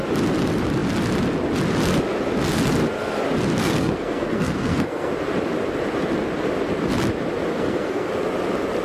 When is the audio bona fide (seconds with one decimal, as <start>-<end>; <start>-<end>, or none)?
0.0-3.6; 5.1-7.5; 8.1-8.8

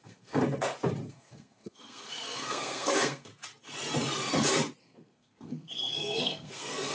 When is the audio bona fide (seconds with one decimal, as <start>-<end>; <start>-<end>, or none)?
0.4-1.1; 3.3-4.8

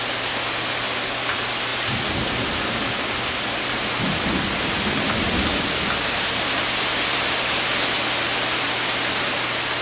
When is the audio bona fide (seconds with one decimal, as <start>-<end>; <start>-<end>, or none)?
0.0-9.8

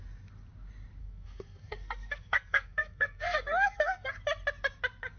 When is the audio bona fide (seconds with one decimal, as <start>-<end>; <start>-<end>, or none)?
0.0-1.0; 4.1-5.2

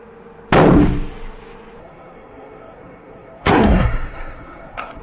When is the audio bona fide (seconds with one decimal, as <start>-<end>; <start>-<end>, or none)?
0.0-1.8

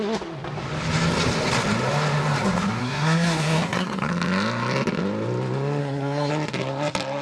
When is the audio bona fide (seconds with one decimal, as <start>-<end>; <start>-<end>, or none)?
0.0-2.8; 4.1-5.8; 6.3-7.2

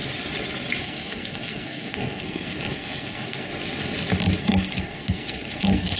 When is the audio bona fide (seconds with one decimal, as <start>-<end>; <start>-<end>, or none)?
0.0-0.8; 3.5-4.4